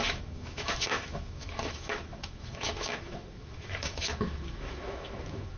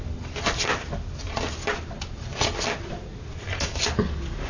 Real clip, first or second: second